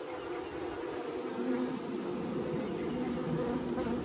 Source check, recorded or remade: recorded